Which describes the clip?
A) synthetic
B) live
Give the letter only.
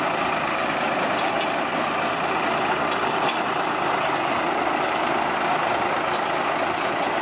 B